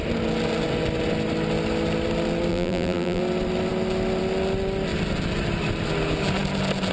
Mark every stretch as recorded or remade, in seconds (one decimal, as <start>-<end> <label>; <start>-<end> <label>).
0.0-2.5 recorded; 2.5-3.2 remade; 3.2-6.9 recorded